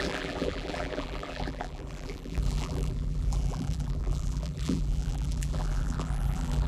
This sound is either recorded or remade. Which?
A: remade